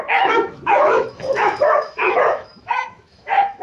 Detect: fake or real fake